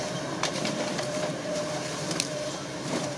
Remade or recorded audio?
remade